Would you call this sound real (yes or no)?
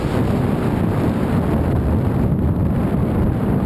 no